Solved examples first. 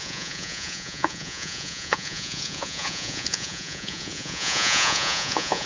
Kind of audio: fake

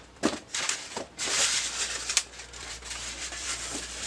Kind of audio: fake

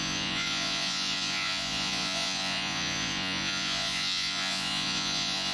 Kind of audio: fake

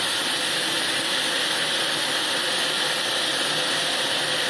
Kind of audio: real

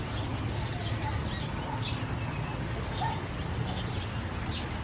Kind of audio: real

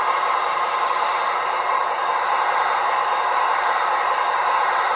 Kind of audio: fake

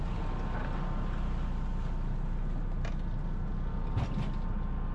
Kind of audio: real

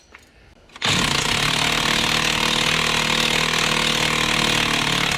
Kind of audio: real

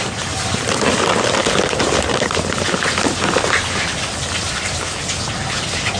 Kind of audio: real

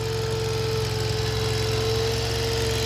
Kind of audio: real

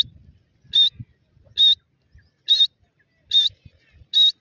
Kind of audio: real